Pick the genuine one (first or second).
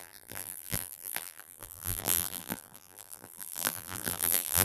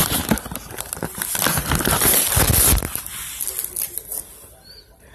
second